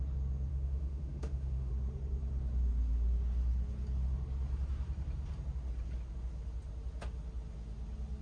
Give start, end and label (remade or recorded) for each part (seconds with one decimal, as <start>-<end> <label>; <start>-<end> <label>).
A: 0.0-0.5 recorded; 0.5-1.7 remade; 1.7-8.2 recorded

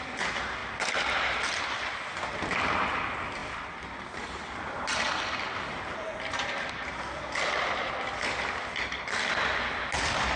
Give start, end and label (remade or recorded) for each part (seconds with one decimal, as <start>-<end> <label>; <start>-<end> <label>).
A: 0.0-10.4 recorded

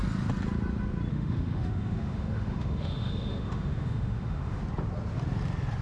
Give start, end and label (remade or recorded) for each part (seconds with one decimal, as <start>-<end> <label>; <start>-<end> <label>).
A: 0.0-1.1 recorded; 1.1-4.6 remade; 4.6-5.8 recorded

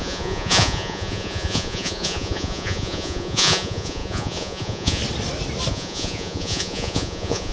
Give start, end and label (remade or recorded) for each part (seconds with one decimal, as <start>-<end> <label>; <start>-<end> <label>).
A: 0.0-5.0 remade; 5.0-5.7 recorded; 5.7-7.5 remade